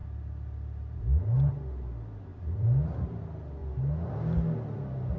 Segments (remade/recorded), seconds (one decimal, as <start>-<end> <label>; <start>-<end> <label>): 0.0-1.0 remade; 1.0-2.3 recorded; 2.3-3.2 remade; 3.2-5.2 recorded